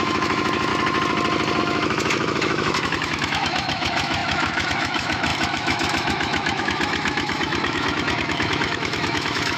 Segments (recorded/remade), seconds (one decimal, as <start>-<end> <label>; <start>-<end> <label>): 0.0-0.7 remade; 0.7-1.6 recorded; 1.6-9.6 remade